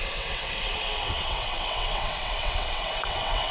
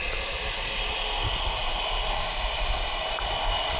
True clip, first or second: second